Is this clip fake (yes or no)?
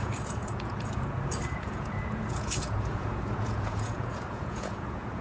yes